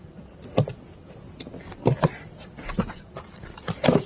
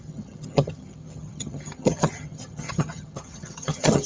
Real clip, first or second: first